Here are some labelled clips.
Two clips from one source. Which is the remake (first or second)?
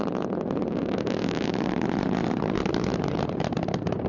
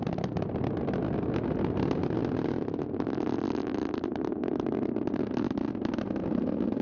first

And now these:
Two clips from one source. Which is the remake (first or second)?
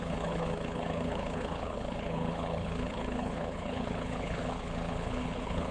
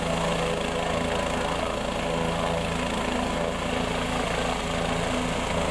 first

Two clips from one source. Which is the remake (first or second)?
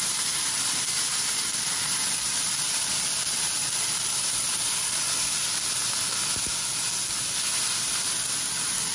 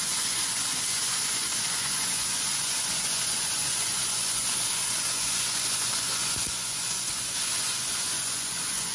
second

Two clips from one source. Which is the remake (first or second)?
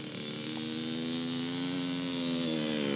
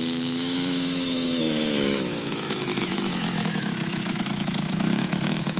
second